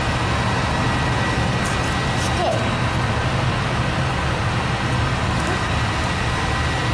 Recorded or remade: recorded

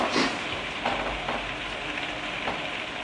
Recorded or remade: recorded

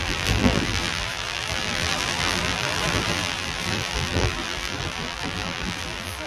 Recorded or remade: remade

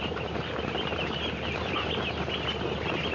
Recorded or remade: recorded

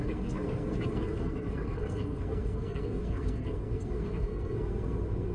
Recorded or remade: remade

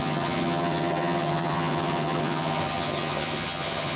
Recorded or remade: remade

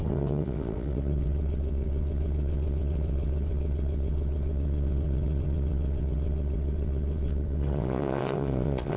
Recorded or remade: remade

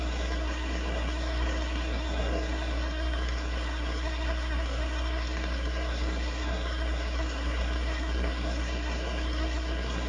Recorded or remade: remade